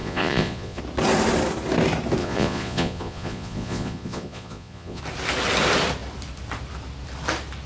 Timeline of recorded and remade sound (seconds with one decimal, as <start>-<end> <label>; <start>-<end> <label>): 0.0-0.8 remade; 0.8-2.2 recorded; 2.2-5.0 remade; 5.0-7.7 recorded